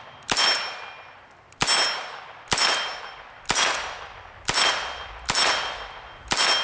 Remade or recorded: recorded